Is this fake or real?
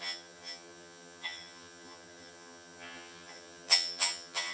fake